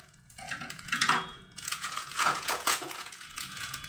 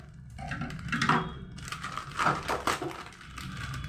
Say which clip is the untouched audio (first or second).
second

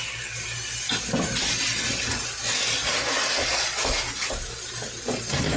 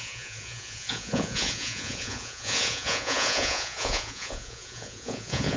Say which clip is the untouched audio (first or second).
first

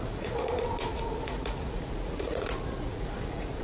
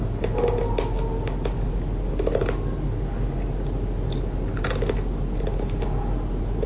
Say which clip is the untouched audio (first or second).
second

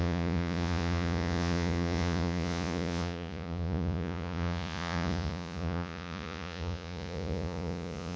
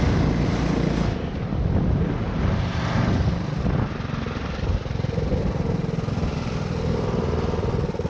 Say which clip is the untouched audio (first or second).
second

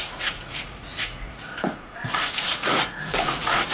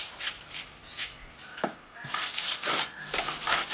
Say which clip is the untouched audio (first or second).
second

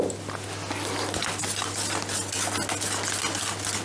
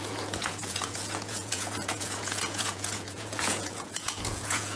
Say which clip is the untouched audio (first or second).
first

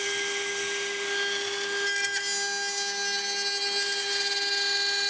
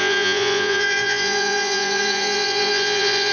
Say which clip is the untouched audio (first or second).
first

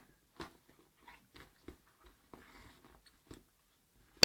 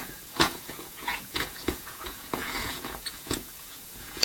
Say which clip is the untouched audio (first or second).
first